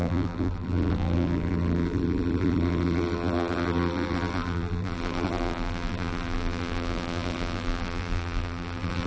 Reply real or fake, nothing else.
fake